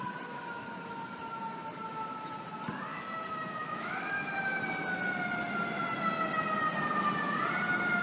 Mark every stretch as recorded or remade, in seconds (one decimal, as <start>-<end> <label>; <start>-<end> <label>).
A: 0.0-2.9 recorded; 2.9-4.6 remade; 4.6-8.0 recorded